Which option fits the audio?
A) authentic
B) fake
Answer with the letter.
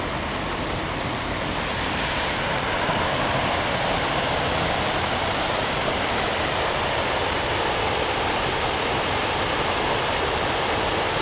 A